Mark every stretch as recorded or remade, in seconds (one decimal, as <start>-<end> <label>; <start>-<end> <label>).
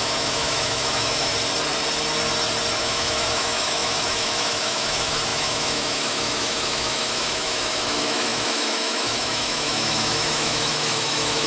0.0-1.3 remade; 1.3-2.8 recorded; 2.8-11.5 remade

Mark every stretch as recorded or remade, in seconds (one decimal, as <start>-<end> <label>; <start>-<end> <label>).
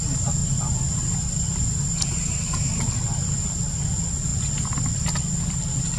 0.0-6.0 recorded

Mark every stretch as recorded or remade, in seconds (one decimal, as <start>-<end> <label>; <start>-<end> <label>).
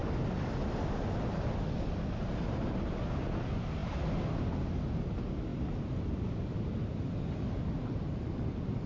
0.0-8.9 recorded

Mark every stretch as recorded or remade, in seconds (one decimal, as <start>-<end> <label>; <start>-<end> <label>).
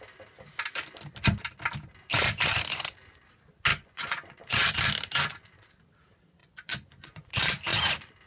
0.0-3.7 recorded; 3.7-4.7 remade; 4.7-6.4 recorded; 6.4-7.3 remade; 7.3-8.3 recorded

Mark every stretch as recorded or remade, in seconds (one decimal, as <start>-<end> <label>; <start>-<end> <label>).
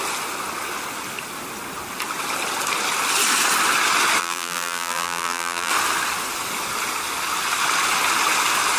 0.0-4.2 recorded; 4.2-5.7 remade; 5.7-8.8 recorded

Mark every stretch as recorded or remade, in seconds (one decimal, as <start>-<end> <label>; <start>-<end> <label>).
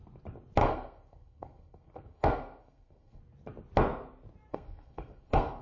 0.0-0.6 recorded; 0.6-3.2 remade; 3.2-4.5 recorded; 4.5-5.6 remade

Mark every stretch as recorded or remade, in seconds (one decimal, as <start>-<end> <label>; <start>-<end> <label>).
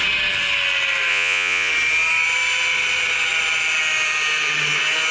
0.0-1.1 recorded; 1.1-1.7 remade; 1.7-5.1 recorded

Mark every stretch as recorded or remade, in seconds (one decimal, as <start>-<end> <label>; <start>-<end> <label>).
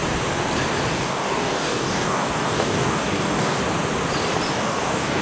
0.0-0.9 recorded; 0.9-3.6 remade; 3.6-4.5 recorded; 4.5-5.2 remade